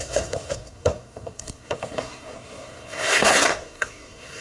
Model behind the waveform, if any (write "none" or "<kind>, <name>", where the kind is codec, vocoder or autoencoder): codec, SNAC